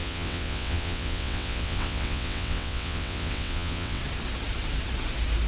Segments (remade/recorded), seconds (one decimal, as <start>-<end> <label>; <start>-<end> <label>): 0.0-4.0 remade; 4.0-5.5 recorded